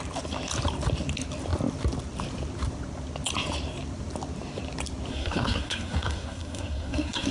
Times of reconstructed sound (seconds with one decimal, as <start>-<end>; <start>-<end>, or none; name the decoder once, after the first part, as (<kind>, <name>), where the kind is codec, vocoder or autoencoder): 5.1-7.3 (codec, SNAC)